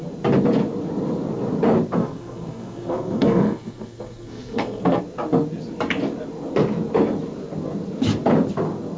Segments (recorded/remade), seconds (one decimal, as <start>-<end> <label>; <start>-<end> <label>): 0.0-2.0 recorded; 2.0-5.0 remade; 5.0-9.0 recorded